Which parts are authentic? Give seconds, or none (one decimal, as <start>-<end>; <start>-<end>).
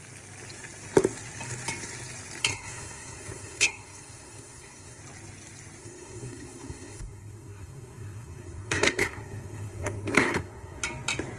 0.0-2.4; 5.0-5.8; 10.8-11.4